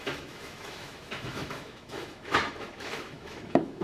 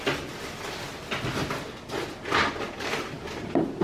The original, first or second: second